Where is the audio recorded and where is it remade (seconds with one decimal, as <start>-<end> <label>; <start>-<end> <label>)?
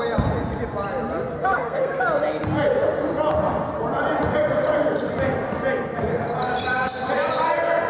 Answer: 0.0-1.4 recorded; 1.4-2.0 remade; 2.0-7.9 recorded